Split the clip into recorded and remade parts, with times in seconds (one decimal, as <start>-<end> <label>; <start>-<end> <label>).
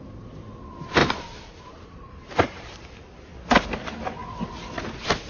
0.0-1.0 recorded; 1.0-3.2 remade; 3.2-5.3 recorded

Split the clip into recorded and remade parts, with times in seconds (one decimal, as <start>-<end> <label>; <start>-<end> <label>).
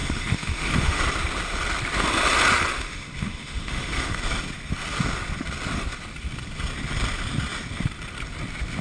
0.0-1.0 remade; 1.0-2.7 recorded; 2.7-4.2 remade; 4.2-8.8 recorded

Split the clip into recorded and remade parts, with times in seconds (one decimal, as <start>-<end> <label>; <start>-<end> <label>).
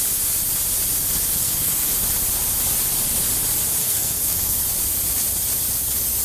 0.0-1.3 recorded; 1.3-1.9 remade; 1.9-3.8 recorded; 3.8-4.6 remade; 4.6-6.2 recorded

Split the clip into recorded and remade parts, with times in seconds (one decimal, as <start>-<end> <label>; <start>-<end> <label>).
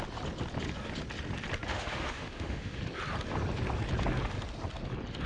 0.0-1.7 recorded; 1.7-2.8 remade; 2.8-5.3 recorded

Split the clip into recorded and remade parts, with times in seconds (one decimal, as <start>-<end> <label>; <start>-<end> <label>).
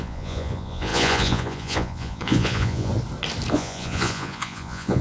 0.0-2.9 remade; 2.9-3.5 recorded; 3.5-5.0 remade